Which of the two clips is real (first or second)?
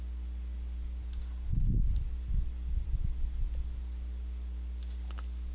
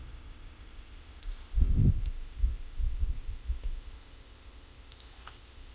first